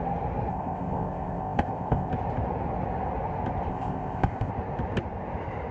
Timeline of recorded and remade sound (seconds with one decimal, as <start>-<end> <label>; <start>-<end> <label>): 0.0-0.5 recorded; 0.5-2.1 remade; 2.1-3.7 recorded; 3.7-4.5 remade; 4.5-5.7 recorded